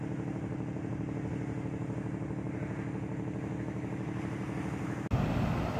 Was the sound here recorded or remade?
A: recorded